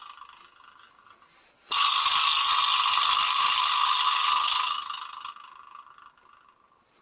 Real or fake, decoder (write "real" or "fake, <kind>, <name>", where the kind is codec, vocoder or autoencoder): real